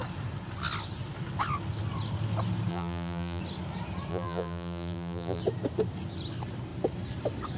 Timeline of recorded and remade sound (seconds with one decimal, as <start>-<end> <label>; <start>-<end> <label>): 0.0-2.7 recorded; 2.7-3.4 remade; 3.4-4.1 recorded; 4.1-5.4 remade; 5.4-7.6 recorded